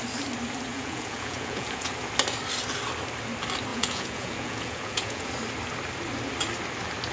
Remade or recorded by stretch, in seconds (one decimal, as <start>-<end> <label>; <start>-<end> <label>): 0.0-0.7 recorded; 0.7-1.9 remade; 1.9-3.7 recorded; 3.7-5.3 remade; 5.3-7.1 recorded